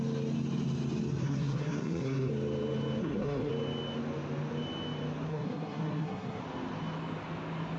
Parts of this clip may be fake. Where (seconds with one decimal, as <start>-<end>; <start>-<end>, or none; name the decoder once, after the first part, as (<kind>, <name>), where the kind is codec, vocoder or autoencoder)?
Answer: 1.2-2.3 (codec, SNAC); 3.0-3.5; 5.3-6.4

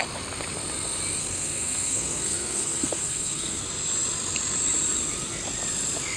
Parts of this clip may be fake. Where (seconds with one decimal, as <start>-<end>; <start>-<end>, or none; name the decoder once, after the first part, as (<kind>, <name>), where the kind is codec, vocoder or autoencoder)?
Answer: 1.2-3.6 (codec, SNAC)

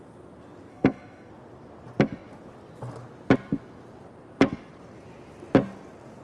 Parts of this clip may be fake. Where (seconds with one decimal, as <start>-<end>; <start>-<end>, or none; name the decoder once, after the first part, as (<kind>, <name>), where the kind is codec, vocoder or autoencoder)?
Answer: 0.7-1.3 (codec, SNAC)